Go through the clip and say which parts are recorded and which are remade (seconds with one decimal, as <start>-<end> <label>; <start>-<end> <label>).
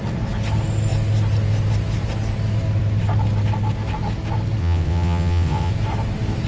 0.0-4.6 recorded; 4.6-5.7 remade; 5.7-6.5 recorded